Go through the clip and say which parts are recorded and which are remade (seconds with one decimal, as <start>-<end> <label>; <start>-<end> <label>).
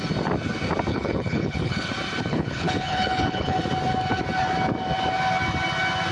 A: 0.0-0.9 recorded; 0.9-1.9 remade; 1.9-2.3 recorded; 2.3-3.6 remade; 3.6-6.1 recorded